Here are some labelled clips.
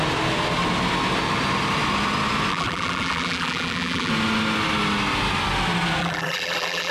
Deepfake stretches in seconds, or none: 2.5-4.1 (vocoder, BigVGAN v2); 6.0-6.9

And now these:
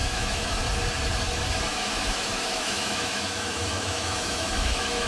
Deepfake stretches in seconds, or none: 0.0-0.6 (autoencoder, DAC-VAE); 1.7-5.1